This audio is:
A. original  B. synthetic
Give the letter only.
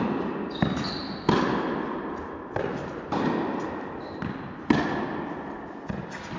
A